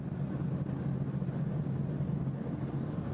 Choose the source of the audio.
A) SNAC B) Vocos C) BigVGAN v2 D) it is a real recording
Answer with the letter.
D